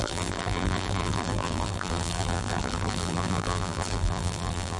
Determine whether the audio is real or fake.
fake